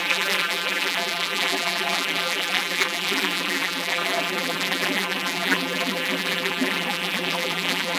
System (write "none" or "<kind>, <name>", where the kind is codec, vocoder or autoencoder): vocoder, BigVGAN v2